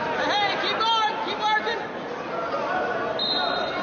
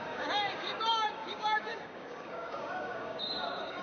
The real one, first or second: first